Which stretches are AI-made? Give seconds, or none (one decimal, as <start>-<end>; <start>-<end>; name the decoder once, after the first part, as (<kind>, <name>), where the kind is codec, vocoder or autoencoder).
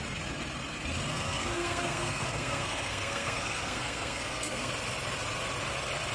1.1-4.7 (codec, SNAC)